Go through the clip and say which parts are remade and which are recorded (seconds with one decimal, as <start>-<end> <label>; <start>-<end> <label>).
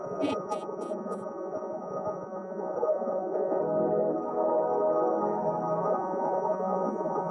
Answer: 0.0-3.6 remade; 3.6-5.8 recorded; 5.8-7.3 remade